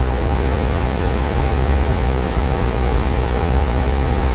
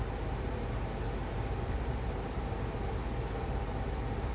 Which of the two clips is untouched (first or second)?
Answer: second